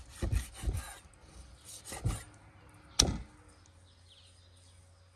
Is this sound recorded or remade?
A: recorded